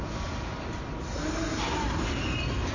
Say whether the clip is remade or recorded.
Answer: recorded